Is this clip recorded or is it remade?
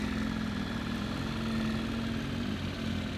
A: recorded